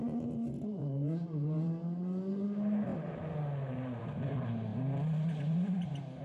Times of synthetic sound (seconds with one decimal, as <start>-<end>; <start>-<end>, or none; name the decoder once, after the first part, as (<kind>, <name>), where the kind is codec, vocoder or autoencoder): 0.0-2.9 (vocoder, BigVGAN v2); 4.0-6.2